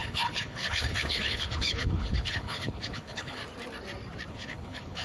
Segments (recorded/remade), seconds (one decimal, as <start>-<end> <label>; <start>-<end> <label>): 0.0-3.4 remade; 3.4-4.3 recorded; 4.3-5.0 remade